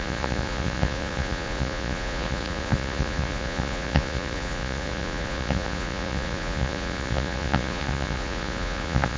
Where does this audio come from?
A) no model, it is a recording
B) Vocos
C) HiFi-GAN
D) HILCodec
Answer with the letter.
B